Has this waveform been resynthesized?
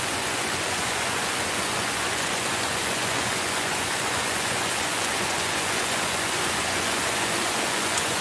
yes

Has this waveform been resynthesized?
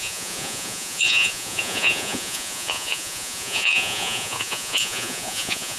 yes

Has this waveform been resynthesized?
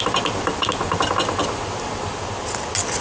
no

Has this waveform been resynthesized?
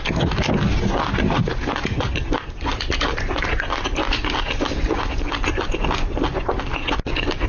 no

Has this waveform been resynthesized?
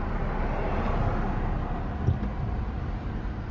no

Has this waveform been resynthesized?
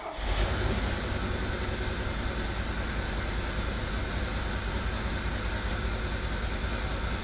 no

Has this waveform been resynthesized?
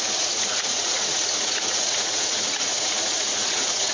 yes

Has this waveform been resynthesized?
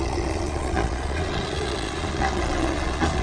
yes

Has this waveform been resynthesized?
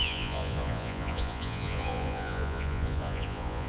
yes